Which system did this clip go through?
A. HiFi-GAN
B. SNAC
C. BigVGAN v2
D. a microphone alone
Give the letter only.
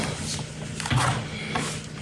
D